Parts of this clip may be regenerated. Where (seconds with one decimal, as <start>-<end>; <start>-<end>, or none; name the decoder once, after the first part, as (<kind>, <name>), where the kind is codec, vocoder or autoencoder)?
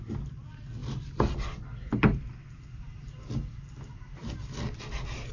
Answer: none